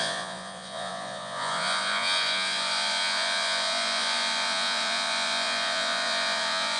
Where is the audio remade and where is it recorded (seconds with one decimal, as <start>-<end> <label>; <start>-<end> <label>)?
0.0-6.8 remade